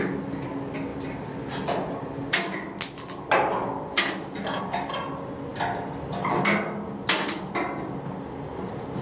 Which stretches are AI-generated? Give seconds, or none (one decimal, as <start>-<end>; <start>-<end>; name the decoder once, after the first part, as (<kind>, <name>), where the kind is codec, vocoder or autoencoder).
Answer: none